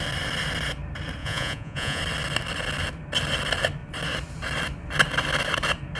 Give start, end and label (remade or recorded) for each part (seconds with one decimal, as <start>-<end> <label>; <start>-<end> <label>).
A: 0.0-1.2 recorded; 1.2-2.0 remade; 2.0-6.0 recorded

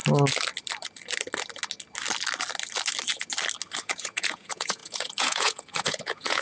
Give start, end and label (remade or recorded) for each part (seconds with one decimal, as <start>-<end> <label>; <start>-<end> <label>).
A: 0.0-3.8 recorded; 3.8-6.4 remade

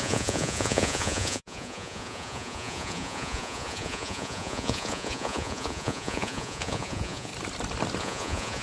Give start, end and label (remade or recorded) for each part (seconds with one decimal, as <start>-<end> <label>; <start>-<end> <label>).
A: 0.0-7.3 remade; 7.3-8.0 recorded; 8.0-8.6 remade